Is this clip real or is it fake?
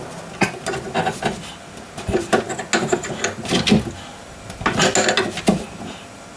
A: real